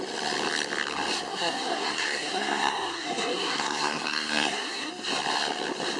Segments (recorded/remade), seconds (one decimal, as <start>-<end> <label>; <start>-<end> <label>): 0.0-1.3 recorded; 1.3-4.9 remade; 4.9-6.0 recorded